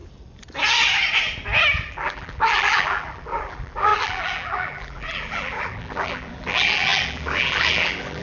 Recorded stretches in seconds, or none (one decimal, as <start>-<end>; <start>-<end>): 0.0-1.9